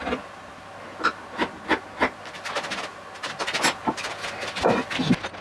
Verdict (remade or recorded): recorded